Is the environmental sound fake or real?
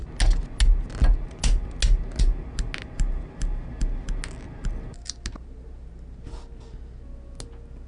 real